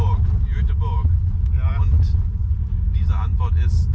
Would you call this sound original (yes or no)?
yes